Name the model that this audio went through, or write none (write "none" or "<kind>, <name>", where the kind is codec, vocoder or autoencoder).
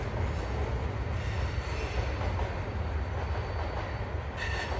none